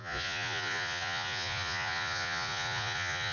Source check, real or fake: fake